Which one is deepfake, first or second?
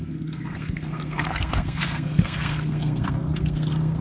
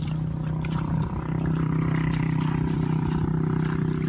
first